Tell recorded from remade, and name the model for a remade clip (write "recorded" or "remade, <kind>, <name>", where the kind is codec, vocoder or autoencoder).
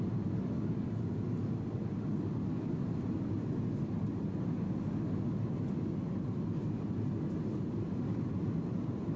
recorded